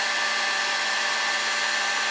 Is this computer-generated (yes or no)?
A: no